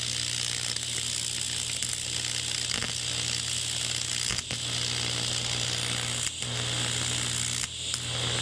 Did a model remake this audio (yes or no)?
no